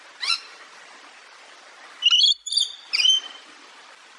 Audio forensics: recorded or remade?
recorded